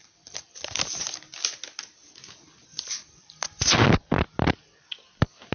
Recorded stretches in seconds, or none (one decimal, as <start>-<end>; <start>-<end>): 0.0-5.5